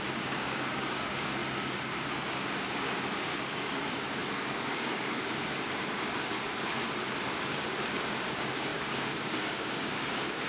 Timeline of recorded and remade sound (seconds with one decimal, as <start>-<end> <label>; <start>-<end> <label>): 0.0-1.4 remade; 1.4-2.2 recorded; 2.2-6.5 remade; 6.5-7.5 recorded; 7.5-10.5 remade